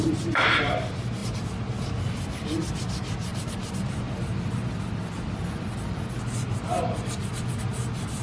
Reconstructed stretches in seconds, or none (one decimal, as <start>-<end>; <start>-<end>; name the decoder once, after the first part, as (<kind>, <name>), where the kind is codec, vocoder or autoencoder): 1.2-2.1 (vocoder, BigVGAN v2); 3.3-4.1